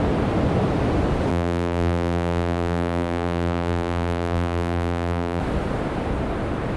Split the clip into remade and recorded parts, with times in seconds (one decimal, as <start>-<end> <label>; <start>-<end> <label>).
0.0-1.3 recorded; 1.3-5.4 remade; 5.4-6.8 recorded